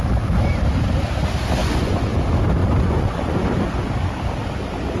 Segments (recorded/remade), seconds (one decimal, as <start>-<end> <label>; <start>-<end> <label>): 0.0-1.6 recorded; 1.6-2.1 remade; 2.1-2.6 recorded; 2.6-3.9 remade; 3.9-5.0 recorded